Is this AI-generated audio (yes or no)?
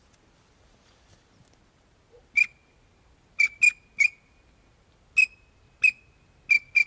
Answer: no